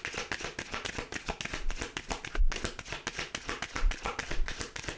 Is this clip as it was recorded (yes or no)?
yes